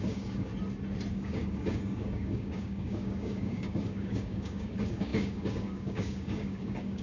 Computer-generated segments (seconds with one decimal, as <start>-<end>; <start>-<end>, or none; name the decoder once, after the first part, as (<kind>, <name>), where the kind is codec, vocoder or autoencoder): 0.0-0.5 (codec, DAC); 1.1-7.0

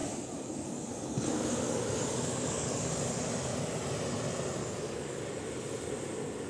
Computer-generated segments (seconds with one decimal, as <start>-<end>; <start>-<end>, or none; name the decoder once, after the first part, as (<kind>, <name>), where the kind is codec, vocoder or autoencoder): 0.0-3.2 (codec, DAC); 4.6-5.2